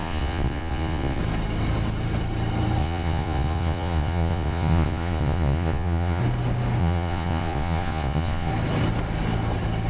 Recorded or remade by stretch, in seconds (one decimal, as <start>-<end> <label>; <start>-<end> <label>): 0.0-1.2 remade; 1.2-2.8 recorded; 2.8-6.2 remade; 6.2-6.8 recorded; 6.8-8.5 remade; 8.5-9.9 recorded

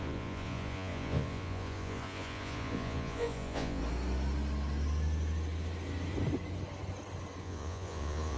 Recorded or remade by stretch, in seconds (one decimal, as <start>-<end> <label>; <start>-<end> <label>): 0.0-3.8 remade; 3.8-7.4 recorded; 7.4-8.4 remade

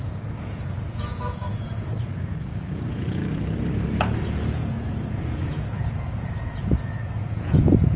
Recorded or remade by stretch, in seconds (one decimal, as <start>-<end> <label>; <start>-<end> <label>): 0.0-3.2 remade; 3.2-4.2 recorded; 4.2-8.0 remade

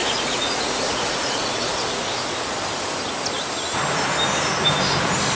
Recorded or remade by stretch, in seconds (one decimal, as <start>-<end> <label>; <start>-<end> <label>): 0.0-2.3 remade; 2.3-5.3 recorded

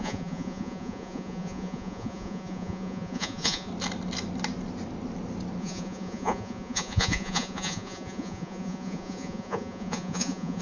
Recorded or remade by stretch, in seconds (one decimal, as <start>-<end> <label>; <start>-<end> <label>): 0.0-3.7 remade; 3.7-5.6 recorded; 5.6-10.6 remade

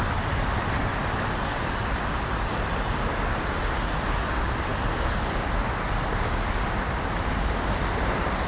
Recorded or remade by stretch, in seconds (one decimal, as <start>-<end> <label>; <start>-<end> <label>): 0.0-8.5 recorded

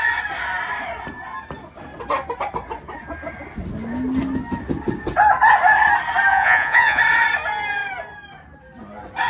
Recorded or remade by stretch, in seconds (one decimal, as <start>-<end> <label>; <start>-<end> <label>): 0.0-6.3 recorded; 6.3-7.0 remade; 7.0-9.3 recorded

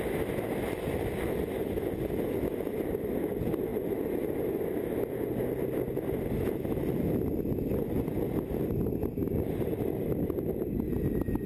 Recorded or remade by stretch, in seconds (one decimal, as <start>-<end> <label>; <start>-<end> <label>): 0.0-11.5 recorded